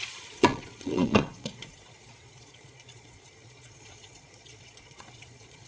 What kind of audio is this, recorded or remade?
remade